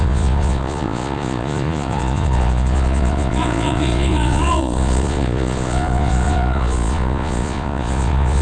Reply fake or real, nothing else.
fake